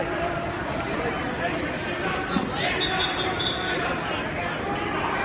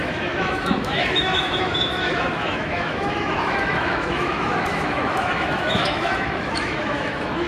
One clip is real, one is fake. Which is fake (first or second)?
second